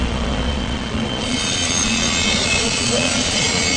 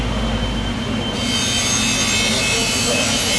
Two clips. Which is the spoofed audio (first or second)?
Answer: first